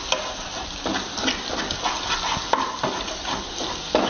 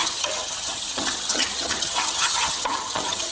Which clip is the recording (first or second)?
first